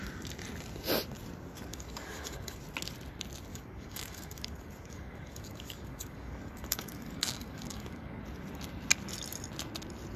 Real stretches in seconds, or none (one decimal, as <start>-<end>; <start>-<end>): 0.0-1.7; 2.6-3.5; 8.2-10.2